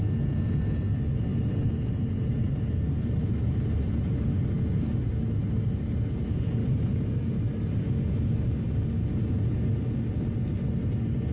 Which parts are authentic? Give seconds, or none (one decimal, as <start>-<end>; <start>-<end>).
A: 0.0-1.3; 4.3-6.6; 7.8-11.3